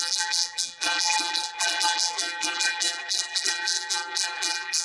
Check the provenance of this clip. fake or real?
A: fake